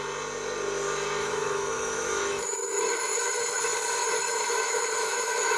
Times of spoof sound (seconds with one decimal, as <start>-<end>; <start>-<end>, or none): 1.2-3.6; 4.0-5.6